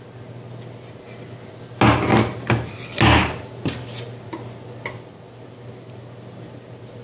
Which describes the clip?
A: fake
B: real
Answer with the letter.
B